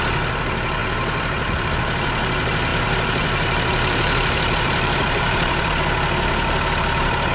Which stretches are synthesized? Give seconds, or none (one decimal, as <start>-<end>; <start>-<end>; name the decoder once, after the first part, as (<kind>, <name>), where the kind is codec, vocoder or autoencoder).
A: 0.8-1.7 (vocoder, BigVGAN v2); 2.7-5.8